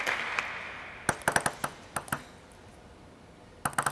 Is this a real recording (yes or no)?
yes